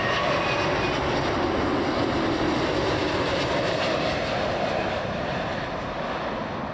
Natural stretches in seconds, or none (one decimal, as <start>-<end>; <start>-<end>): 0.0-6.7